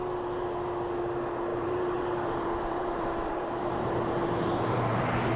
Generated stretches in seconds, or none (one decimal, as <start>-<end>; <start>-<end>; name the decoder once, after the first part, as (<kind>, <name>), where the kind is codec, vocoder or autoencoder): 1.5-4.7 (vocoder, BigVGAN v2)